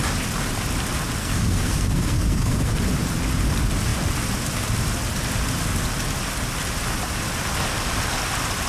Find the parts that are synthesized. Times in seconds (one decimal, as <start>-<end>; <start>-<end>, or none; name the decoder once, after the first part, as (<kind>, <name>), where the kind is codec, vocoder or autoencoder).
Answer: 1.2-2.7 (codec, SNAC)